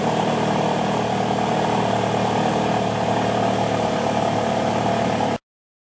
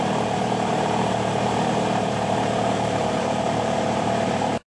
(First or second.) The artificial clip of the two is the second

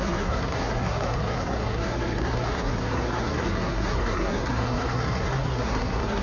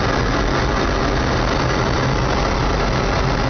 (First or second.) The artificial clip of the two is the first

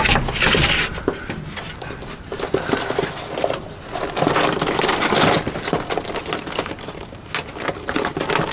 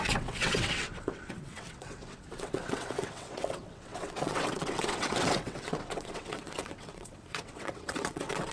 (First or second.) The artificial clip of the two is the second